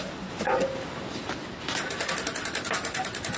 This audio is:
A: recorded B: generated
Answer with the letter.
A